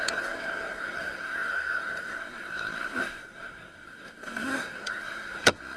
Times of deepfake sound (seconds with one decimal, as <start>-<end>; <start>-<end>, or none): 0.0-5.8